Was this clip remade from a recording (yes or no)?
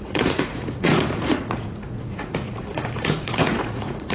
yes